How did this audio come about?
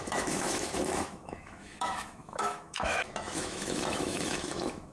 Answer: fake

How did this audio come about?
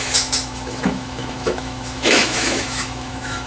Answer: fake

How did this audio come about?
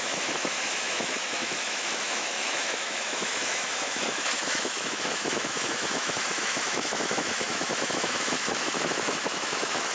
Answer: fake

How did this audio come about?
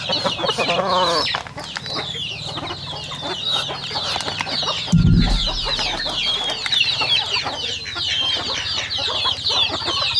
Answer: real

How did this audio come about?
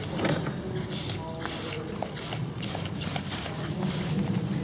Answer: real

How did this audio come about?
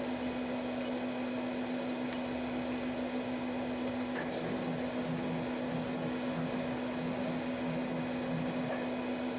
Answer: real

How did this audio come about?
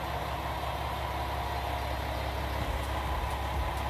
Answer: real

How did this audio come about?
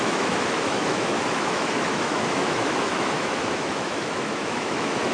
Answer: fake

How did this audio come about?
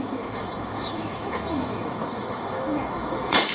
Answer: fake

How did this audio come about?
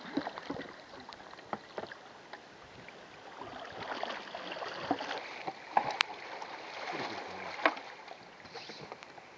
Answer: real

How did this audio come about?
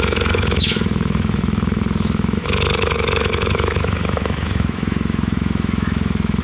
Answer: fake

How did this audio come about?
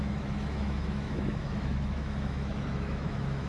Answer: fake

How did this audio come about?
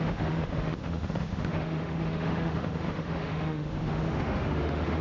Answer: fake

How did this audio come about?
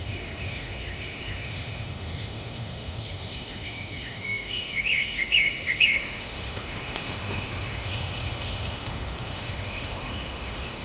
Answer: fake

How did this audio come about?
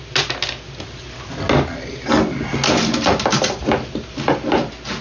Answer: real